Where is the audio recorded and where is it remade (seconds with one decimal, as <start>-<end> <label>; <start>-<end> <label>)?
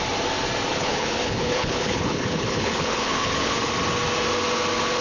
0.0-0.7 recorded; 0.7-3.7 remade; 3.7-5.0 recorded